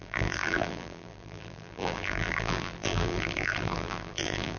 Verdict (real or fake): fake